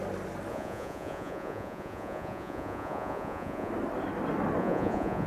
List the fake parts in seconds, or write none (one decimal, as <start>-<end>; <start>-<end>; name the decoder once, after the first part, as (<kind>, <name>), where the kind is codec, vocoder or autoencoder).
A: 0.5-3.7 (vocoder, Vocos); 4.6-5.3